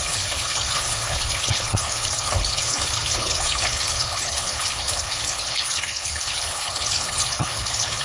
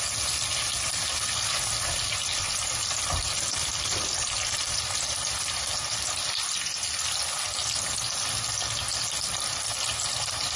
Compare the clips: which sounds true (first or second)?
second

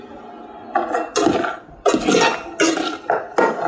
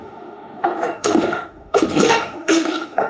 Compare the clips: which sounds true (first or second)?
first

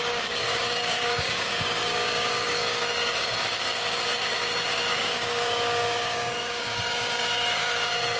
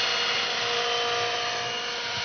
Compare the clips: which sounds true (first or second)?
second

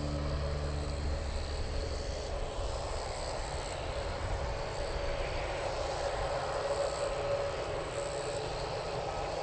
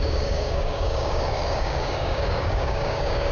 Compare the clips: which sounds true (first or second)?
first